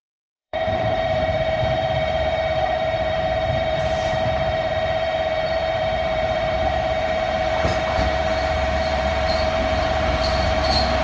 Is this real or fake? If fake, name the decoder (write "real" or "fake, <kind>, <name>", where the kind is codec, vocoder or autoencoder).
fake, vocoder, BigVGAN v2